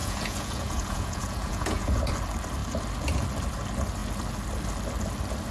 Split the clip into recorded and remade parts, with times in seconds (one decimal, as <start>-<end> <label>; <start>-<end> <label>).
0.0-2.1 remade; 2.1-5.5 recorded